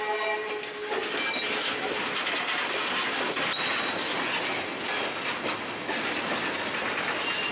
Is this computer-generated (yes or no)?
no